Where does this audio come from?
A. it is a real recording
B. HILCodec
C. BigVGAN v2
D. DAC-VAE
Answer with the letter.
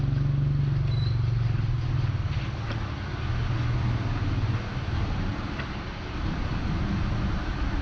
A